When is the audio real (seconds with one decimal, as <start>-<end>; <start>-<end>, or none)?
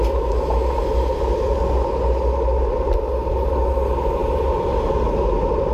0.0-5.7